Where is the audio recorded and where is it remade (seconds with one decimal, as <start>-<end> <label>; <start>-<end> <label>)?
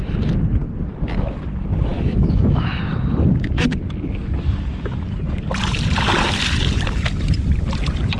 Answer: 0.0-1.9 recorded; 1.9-2.8 remade; 2.8-8.2 recorded